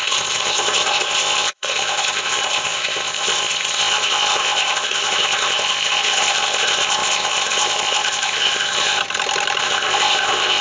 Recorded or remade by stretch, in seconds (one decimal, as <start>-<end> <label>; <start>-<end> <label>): 0.0-9.0 remade; 9.0-9.6 recorded; 9.6-10.6 remade